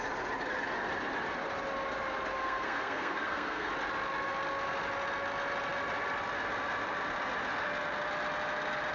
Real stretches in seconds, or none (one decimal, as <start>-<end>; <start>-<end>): 0.0-2.4; 3.7-8.9